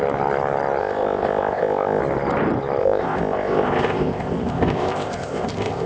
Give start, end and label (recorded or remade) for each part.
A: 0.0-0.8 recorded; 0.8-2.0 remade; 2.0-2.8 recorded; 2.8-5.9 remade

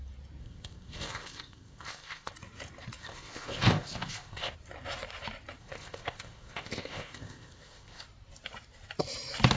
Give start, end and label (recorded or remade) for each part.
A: 0.0-0.4 recorded; 0.4-2.3 remade; 2.3-3.0 recorded; 3.0-4.5 remade; 4.5-5.6 recorded; 5.6-8.0 remade; 8.0-9.6 recorded

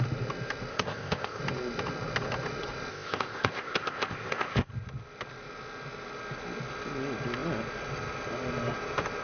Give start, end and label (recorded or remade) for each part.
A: 0.0-0.7 recorded; 0.7-1.4 remade; 1.4-2.9 recorded; 2.9-4.7 remade; 4.7-9.2 recorded

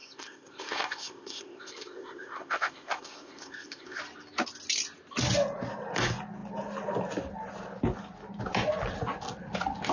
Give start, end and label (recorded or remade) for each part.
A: 0.0-4.0 remade; 4.0-9.9 recorded

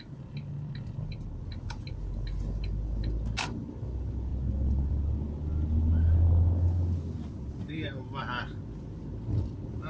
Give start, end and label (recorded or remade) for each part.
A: 0.0-9.9 recorded

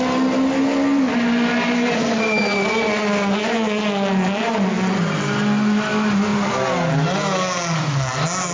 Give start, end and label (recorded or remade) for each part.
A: 0.0-8.5 recorded

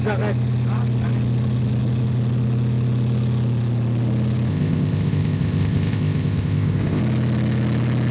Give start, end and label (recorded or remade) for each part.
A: 0.0-4.5 recorded; 4.5-7.0 remade; 7.0-8.1 recorded

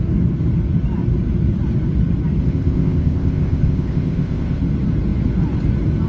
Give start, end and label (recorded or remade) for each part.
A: 0.0-2.4 recorded; 2.4-4.6 remade; 4.6-6.1 recorded